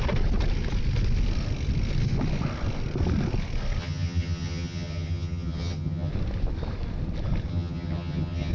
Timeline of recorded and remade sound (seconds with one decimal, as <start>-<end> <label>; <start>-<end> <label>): 0.0-3.8 recorded; 3.8-6.1 remade; 6.1-7.5 recorded; 7.5-8.5 remade